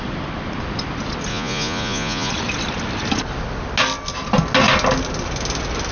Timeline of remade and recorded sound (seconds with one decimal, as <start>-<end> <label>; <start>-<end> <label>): 0.0-1.3 recorded; 1.3-2.3 remade; 2.3-5.9 recorded